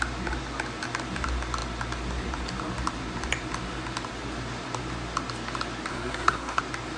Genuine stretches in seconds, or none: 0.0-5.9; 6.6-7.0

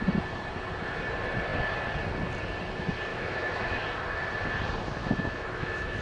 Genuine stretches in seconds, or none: 0.0-3.1; 3.8-5.0